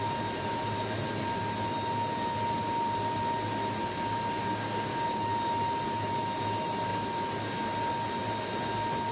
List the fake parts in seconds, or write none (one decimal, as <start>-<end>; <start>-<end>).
4.5-5.2